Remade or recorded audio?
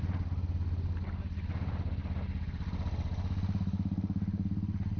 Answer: recorded